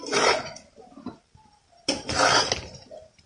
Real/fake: real